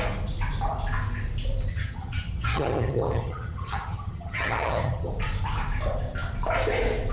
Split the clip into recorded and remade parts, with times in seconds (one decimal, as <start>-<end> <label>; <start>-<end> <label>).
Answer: 0.0-1.7 recorded; 1.7-5.1 remade; 5.1-7.1 recorded